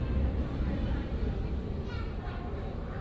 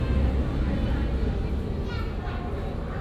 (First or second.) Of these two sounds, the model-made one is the first